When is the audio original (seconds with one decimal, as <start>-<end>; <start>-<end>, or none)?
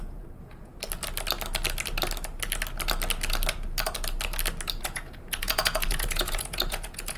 0.7-4.8